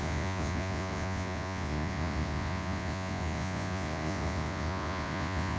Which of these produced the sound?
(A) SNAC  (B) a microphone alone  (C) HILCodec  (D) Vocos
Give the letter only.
D